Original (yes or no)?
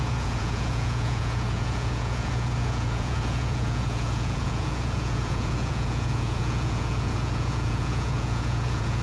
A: no